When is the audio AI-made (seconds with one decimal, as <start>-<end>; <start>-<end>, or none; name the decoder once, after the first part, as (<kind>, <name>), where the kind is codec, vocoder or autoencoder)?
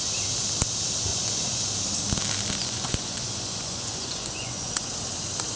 1.1-1.7 (vocoder, Vocos); 2.6-4.9